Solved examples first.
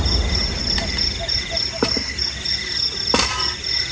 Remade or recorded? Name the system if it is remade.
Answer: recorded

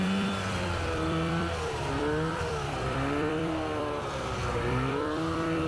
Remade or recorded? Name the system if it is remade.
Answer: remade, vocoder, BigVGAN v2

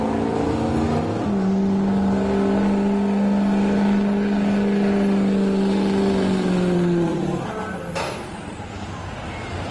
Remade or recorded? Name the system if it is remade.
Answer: recorded